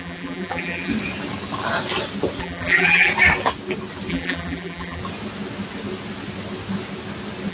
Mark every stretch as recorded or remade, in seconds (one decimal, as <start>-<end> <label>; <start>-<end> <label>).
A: 0.0-0.9 remade; 0.9-2.4 recorded; 2.4-3.1 remade; 3.1-4.1 recorded; 4.1-5.0 remade; 5.0-7.5 recorded